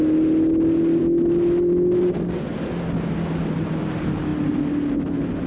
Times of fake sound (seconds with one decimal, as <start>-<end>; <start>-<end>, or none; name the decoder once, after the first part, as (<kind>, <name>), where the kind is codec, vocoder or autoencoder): none